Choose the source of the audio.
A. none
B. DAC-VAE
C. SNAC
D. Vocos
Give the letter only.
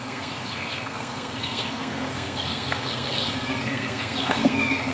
C